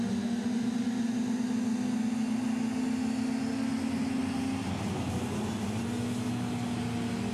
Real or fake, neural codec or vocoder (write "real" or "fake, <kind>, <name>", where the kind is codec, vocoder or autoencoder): real